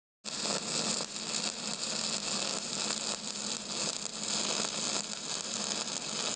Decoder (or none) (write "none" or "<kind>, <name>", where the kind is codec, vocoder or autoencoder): none